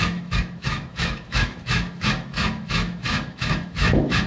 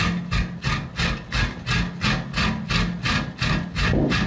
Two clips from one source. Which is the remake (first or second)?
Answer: first